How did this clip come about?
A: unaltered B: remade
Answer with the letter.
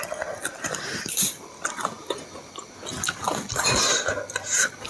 A